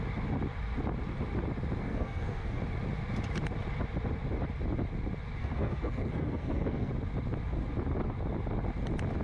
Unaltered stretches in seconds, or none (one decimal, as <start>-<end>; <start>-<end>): 0.0-1.8; 2.6-5.4; 6.9-9.2